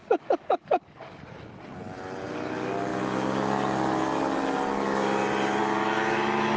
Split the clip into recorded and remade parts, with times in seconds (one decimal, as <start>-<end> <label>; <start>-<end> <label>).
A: 0.0-1.2 remade; 1.2-6.6 recorded